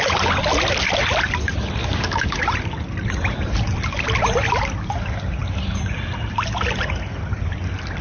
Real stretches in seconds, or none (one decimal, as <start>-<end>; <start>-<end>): 0.0-1.8; 2.4-8.0